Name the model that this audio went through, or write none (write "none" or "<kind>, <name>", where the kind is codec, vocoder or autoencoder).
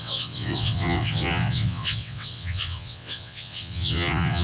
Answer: vocoder, WaveNeXt